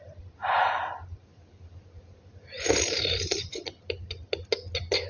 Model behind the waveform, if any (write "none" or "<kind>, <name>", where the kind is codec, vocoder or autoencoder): none